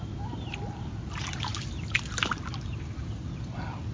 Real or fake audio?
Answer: real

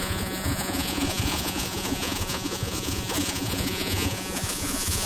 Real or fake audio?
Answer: fake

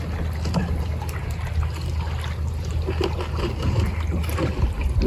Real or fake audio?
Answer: real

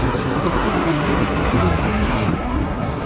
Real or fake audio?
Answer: fake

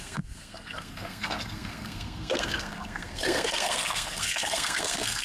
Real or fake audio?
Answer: fake